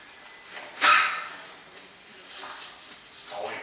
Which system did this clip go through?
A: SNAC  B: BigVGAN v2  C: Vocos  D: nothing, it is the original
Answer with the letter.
D